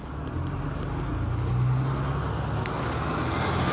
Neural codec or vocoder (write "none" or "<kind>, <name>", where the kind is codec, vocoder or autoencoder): none